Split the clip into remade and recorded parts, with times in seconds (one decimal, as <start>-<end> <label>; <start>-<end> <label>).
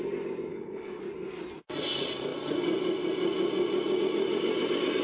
0.0-0.5 recorded; 0.5-1.0 remade; 1.0-5.0 recorded